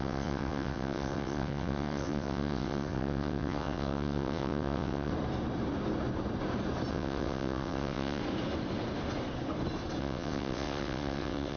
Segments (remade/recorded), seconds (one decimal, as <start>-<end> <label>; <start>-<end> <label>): 0.0-5.1 remade; 5.1-6.9 recorded; 6.9-8.2 remade; 8.2-10.0 recorded; 10.0-11.6 remade